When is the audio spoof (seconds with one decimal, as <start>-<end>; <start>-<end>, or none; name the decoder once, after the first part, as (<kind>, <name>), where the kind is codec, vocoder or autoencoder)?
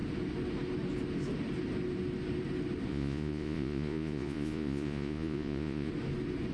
2.9-5.9 (vocoder, Vocos)